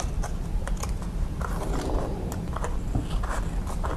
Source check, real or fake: real